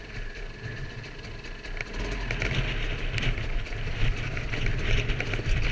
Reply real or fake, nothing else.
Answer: real